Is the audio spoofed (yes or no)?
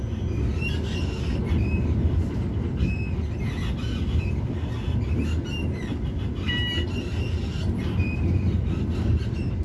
no